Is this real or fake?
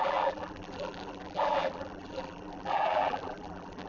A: fake